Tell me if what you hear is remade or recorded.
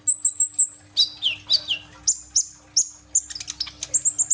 recorded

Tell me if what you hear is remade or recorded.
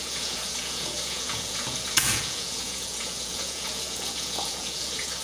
remade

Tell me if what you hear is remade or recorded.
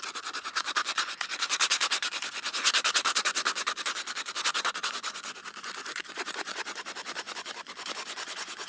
remade